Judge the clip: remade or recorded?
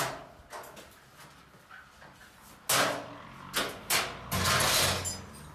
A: recorded